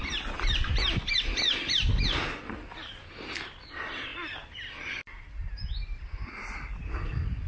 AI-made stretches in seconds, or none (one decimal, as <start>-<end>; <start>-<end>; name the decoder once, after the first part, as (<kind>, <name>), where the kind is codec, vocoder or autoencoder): none